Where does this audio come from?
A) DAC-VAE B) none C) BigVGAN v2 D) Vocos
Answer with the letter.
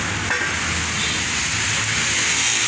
B